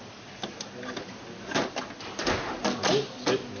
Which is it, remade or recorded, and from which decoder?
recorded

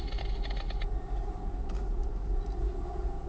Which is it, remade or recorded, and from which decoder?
recorded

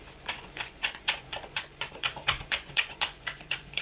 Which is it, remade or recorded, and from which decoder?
remade, vocoder, Vocos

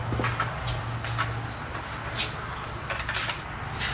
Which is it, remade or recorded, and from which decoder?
recorded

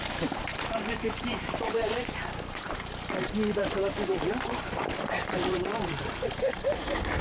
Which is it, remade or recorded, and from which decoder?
remade, vocoder, BigVGAN v2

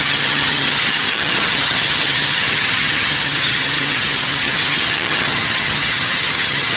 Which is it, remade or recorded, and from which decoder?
remade, vocoder, HiFi-GAN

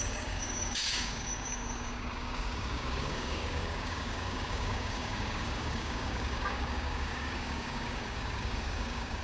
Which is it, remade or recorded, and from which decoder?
remade, codec, DAC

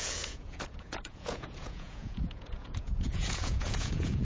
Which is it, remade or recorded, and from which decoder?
remade, vocoder, Vocos